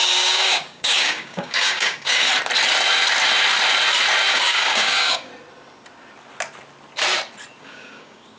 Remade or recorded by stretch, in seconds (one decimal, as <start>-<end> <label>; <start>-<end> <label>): 0.0-2.3 remade; 2.3-4.3 recorded; 4.3-5.3 remade; 5.3-7.6 recorded; 7.6-8.4 remade